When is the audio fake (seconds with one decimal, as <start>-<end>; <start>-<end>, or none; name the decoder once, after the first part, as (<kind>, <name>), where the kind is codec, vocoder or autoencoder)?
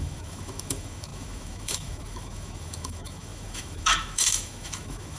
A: 0.0-5.2 (autoencoder, DAC-VAE)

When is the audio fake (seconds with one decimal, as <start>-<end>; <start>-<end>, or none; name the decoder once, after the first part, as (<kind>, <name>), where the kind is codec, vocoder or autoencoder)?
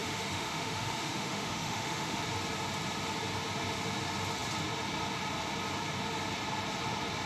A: 0.0-2.2 (autoencoder, DAC-VAE)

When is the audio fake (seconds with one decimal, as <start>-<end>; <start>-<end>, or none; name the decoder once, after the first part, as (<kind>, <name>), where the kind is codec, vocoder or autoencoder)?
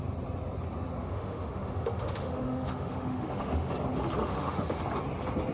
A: 1.0-3.7 (autoencoder, DAC-VAE); 4.2-4.8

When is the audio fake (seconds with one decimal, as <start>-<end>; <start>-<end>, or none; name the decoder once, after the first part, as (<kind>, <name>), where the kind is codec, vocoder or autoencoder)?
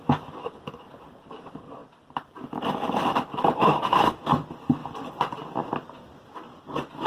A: 3.6-4.2 (autoencoder, DAC-VAE)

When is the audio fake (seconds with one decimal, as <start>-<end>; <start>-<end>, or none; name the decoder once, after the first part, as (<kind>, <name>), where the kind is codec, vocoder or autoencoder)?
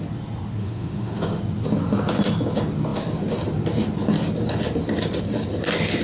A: 0.6-1.4 (autoencoder, DAC-VAE)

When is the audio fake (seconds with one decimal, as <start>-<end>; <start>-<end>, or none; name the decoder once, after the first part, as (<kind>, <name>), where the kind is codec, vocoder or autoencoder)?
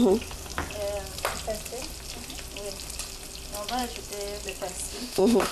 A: 4.9-5.5 (autoencoder, DAC-VAE)